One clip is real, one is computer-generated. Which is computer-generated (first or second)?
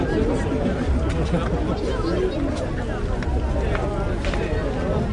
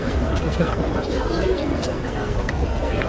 second